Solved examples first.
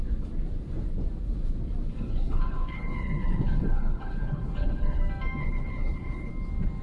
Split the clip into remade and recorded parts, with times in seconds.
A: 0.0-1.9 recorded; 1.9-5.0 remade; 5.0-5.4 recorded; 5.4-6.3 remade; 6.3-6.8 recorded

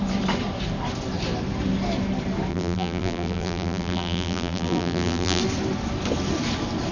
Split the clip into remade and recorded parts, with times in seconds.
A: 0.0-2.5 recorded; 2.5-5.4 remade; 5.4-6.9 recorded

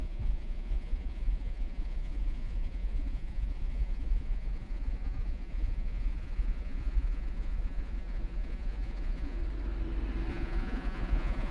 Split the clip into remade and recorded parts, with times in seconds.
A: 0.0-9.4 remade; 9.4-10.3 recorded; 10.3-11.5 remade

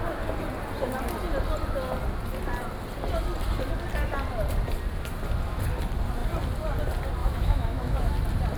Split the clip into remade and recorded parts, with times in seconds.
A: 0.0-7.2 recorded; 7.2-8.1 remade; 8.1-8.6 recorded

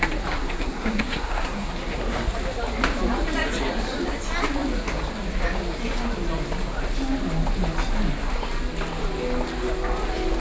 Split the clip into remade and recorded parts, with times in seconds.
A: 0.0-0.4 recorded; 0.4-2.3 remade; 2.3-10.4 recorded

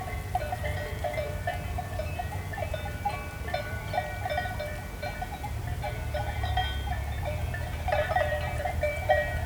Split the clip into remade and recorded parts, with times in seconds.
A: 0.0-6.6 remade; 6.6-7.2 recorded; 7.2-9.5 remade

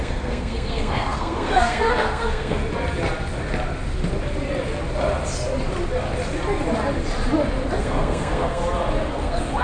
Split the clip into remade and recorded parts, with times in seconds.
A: 0.0-2.6 remade; 2.6-7.8 recorded; 7.8-8.6 remade; 8.6-9.1 recorded; 9.1-9.6 remade